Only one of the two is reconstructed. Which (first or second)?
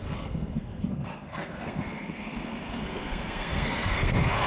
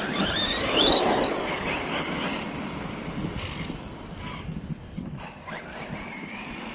first